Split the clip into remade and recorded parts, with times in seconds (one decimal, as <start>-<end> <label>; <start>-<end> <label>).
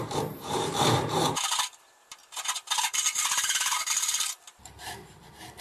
0.0-2.2 remade; 2.2-2.8 recorded; 2.8-5.6 remade